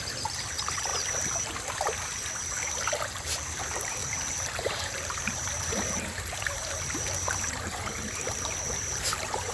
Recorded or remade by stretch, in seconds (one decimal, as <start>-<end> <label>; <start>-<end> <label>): 0.0-9.5 remade